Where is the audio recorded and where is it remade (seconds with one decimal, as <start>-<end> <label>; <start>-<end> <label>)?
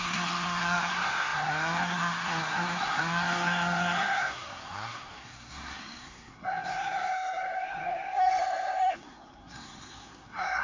0.0-10.6 remade